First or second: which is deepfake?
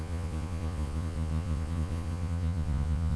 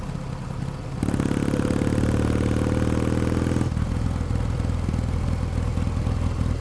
first